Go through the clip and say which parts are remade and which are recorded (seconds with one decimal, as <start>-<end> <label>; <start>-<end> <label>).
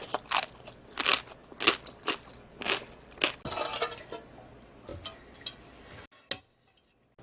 0.0-7.2 recorded